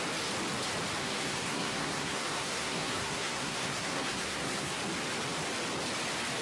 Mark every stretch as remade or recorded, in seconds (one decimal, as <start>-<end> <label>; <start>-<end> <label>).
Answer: 0.0-1.0 recorded; 1.0-4.8 remade; 4.8-6.4 recorded